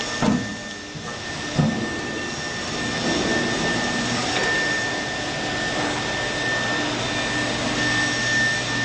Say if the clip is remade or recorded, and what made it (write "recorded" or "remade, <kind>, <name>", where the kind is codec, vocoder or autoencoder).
recorded